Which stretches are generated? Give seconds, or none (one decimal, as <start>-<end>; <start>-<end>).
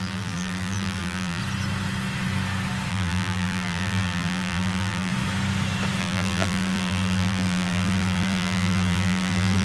0.0-1.4; 2.9-5.1; 6.0-9.6